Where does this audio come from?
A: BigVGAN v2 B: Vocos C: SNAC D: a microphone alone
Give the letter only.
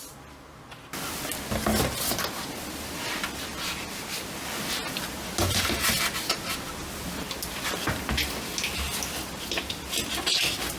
D